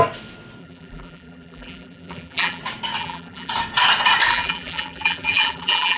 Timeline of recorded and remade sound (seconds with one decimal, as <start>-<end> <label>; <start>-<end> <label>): 0.0-0.6 recorded; 0.6-2.6 remade; 2.6-3.0 recorded; 3.0-3.5 remade; 3.5-4.3 recorded; 4.3-6.0 remade